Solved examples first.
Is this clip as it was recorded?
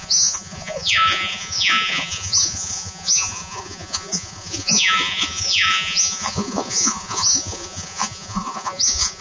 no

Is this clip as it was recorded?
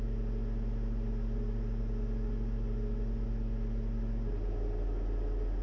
yes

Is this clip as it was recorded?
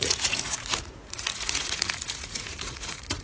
no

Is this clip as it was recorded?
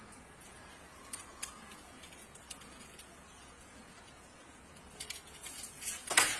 no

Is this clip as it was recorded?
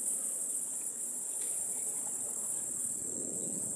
no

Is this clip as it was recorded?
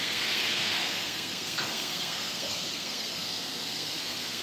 no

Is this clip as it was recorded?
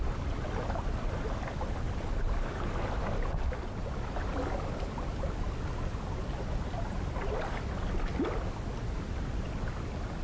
yes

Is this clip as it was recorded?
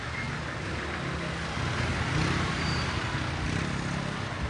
yes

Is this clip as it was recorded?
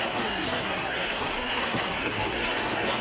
no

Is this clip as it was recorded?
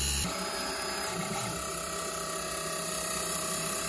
no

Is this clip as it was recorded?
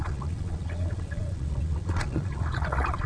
no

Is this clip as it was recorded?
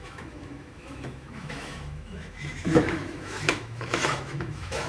no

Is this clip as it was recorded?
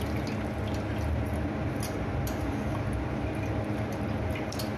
yes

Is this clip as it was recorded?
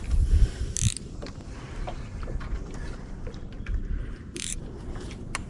no